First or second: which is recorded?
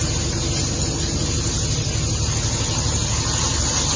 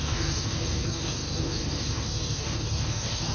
first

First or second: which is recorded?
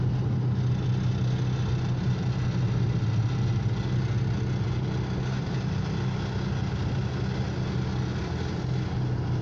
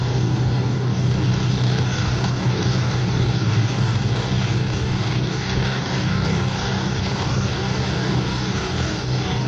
first